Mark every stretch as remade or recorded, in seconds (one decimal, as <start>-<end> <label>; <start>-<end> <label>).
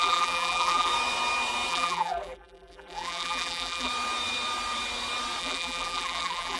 0.0-0.9 remade; 0.9-1.7 recorded; 1.7-3.9 remade; 3.9-5.4 recorded; 5.4-6.6 remade